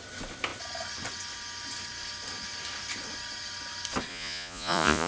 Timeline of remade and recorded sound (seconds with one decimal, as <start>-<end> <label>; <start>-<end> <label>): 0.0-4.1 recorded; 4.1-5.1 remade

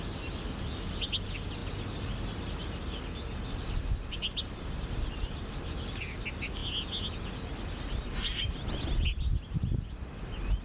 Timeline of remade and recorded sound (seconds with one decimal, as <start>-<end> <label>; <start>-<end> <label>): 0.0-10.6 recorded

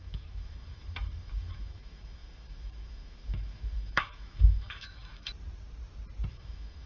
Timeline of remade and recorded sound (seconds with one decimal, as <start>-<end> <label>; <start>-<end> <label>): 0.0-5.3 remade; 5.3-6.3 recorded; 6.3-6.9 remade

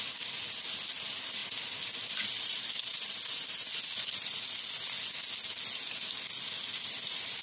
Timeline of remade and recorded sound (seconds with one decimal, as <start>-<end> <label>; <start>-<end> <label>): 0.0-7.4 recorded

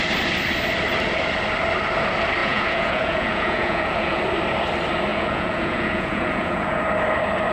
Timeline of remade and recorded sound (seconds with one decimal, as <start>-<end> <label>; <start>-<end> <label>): 0.0-2.4 recorded; 2.4-4.2 remade; 4.2-5.1 recorded; 5.1-6.8 remade; 6.8-7.5 recorded

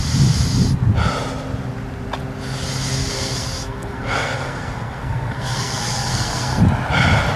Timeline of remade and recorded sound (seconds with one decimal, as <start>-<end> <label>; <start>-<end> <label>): 0.0-3.1 recorded; 3.1-6.6 remade; 6.6-7.4 recorded